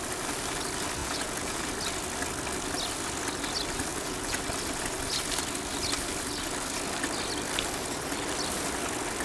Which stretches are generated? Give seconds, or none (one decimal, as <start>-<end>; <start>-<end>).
1.0-1.7; 3.9-4.4